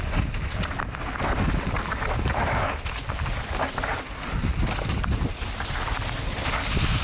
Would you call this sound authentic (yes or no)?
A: yes